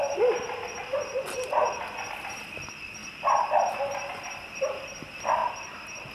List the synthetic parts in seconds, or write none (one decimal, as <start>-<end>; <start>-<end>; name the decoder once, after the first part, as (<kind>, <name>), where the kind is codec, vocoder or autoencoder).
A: none